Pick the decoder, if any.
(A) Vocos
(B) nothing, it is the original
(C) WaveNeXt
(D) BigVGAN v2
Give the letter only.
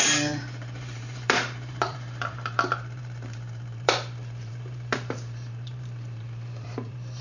D